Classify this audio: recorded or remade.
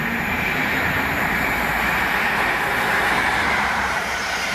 remade